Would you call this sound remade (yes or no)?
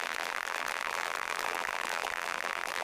yes